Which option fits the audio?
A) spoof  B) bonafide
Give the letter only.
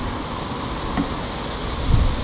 B